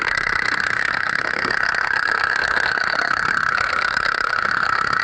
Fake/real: fake